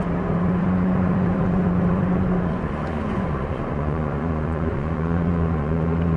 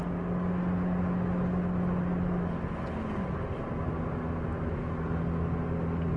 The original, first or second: second